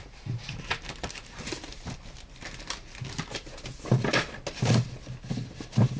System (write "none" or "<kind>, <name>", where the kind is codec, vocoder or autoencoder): none